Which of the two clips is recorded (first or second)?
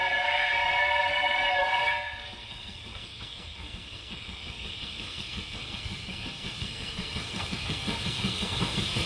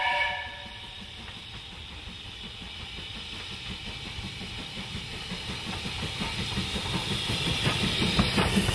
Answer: second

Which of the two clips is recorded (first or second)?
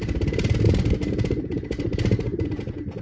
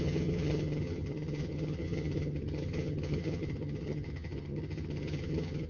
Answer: first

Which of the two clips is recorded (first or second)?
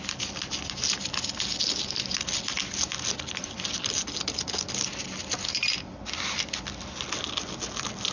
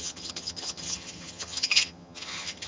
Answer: first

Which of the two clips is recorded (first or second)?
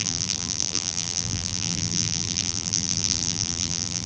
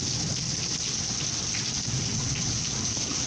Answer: second